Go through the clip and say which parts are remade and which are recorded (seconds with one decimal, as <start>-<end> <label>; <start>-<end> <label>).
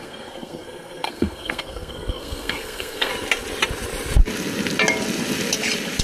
0.0-3.1 remade; 3.1-6.0 recorded